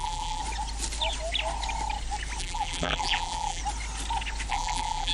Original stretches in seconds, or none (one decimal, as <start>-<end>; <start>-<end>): 0.4-2.4; 3.6-4.5